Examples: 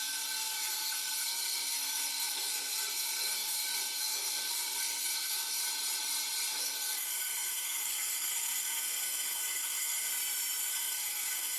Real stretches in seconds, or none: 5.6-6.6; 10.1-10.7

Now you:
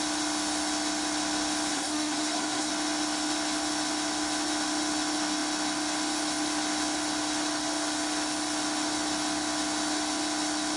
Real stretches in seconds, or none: 0.0-1.7; 2.7-10.8

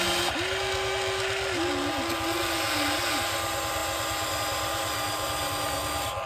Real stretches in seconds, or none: 0.0-6.3

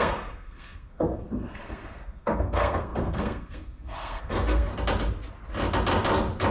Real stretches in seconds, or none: 4.7-6.5

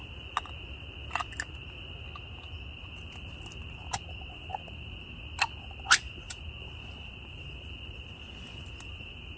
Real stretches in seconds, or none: 0.0-9.4

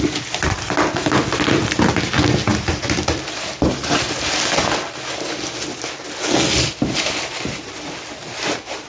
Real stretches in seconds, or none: 0.0-8.9

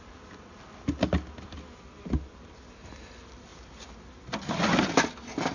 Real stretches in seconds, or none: 0.0-5.5